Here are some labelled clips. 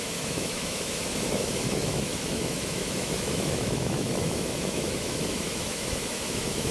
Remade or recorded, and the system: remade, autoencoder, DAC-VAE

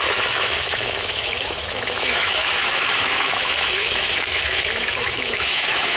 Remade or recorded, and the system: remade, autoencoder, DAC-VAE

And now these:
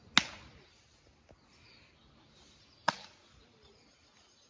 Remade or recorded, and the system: recorded